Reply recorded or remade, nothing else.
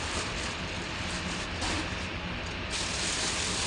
recorded